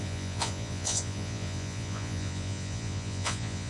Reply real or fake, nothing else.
fake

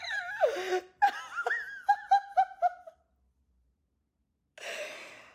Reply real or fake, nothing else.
real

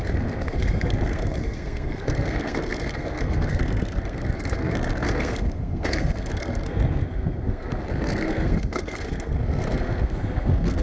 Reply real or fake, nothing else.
fake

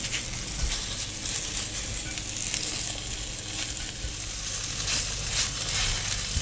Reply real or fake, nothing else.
real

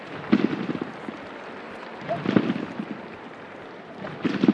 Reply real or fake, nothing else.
real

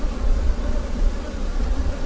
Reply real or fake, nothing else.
fake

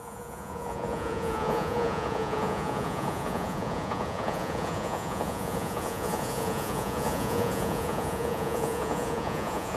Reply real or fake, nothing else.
fake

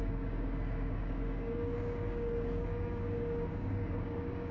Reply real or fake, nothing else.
fake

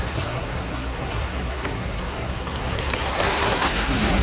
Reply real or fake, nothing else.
fake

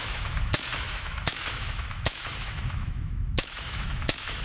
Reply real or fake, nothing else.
fake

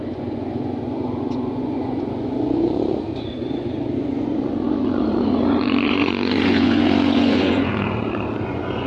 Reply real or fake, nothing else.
fake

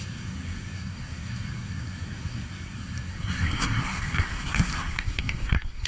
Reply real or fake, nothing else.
fake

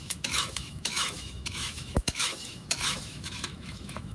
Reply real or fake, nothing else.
fake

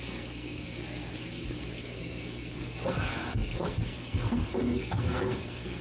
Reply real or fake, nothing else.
fake